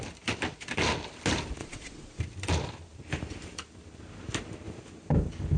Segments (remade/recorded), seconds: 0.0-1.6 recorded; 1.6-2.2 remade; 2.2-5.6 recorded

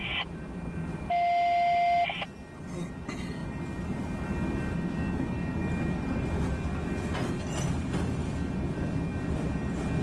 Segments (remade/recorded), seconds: 0.0-10.0 recorded

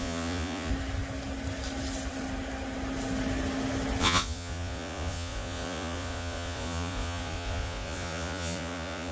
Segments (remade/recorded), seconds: 0.0-0.7 remade; 0.7-4.0 recorded; 4.0-9.1 remade

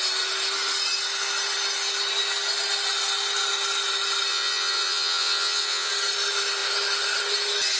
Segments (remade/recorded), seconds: 0.0-4.3 recorded; 4.3-5.9 remade; 5.9-7.8 recorded

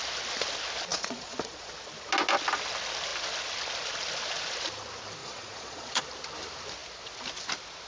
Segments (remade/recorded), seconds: 0.0-0.9 recorded; 0.9-1.7 remade; 1.7-5.2 recorded; 5.2-6.0 remade; 6.0-7.9 recorded

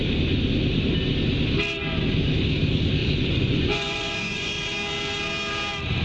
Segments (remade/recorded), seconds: 0.0-3.0 recorded; 3.0-4.5 remade; 4.5-6.0 recorded